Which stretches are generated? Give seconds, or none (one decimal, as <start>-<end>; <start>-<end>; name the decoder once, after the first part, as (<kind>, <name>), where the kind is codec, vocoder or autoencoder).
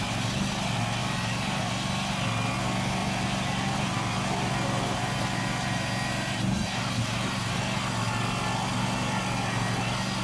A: 1.0-1.6 (vocoder, BigVGAN v2); 3.0-7.6